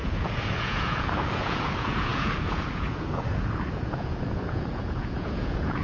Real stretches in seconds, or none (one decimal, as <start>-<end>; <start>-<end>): none